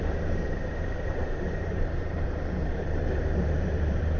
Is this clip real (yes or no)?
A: no